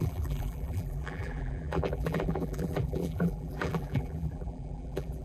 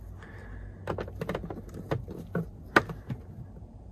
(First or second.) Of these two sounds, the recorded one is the second